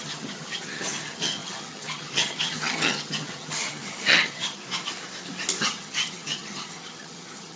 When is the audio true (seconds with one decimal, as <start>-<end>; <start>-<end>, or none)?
4.6-5.6